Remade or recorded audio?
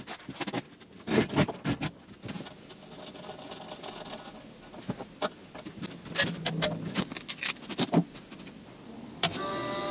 recorded